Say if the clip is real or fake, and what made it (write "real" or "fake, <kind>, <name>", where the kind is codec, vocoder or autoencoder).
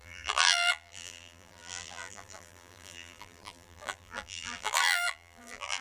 fake, vocoder, BigVGAN v2